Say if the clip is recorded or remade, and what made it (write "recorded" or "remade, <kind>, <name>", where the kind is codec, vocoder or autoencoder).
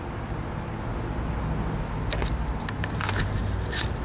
recorded